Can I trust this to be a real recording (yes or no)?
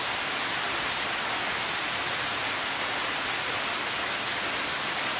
yes